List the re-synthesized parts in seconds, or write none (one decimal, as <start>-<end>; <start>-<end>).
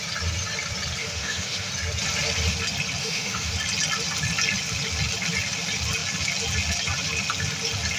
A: 1.0-1.7; 3.0-3.5